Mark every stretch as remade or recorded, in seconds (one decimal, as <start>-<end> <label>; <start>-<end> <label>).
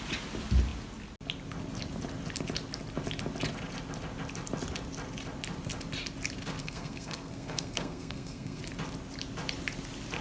0.0-6.6 recorded; 6.6-8.6 remade; 8.6-10.2 recorded